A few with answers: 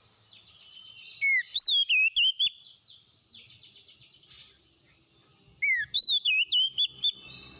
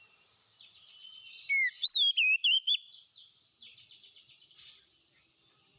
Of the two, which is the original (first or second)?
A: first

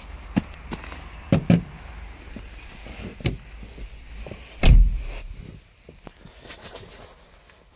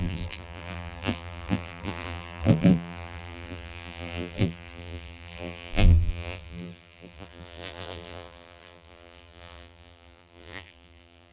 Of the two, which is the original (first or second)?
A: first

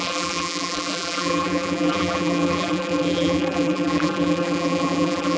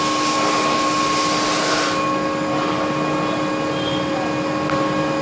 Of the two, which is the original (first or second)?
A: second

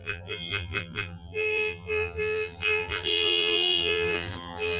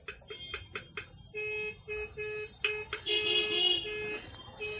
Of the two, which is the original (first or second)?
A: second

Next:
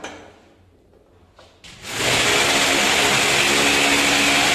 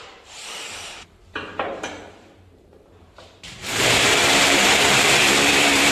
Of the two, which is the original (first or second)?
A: first